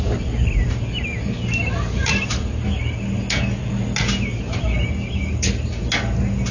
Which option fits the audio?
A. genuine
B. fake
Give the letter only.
A